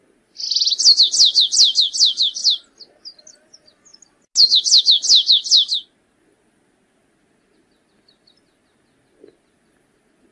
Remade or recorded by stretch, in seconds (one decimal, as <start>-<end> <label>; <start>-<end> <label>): 0.0-10.3 recorded